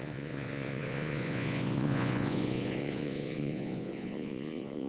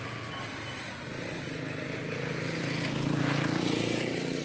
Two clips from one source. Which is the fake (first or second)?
first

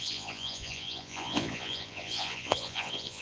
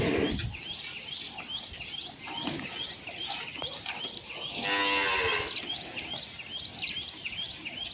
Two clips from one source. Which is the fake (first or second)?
first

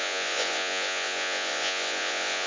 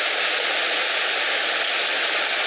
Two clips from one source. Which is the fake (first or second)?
first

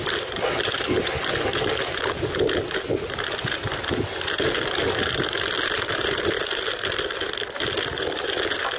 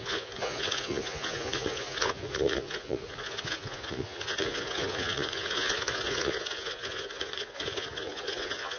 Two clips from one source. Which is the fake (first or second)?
second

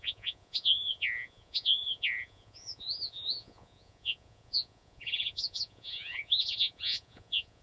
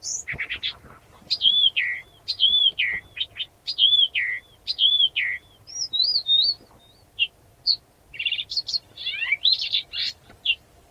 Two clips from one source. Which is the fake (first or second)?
first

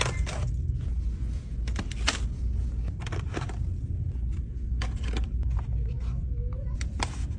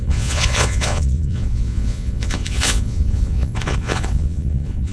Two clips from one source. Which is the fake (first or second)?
second